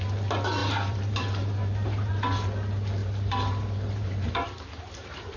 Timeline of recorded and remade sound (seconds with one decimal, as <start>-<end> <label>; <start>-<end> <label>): 0.0-0.6 recorded; 0.6-2.1 remade; 2.1-3.0 recorded; 3.0-5.4 remade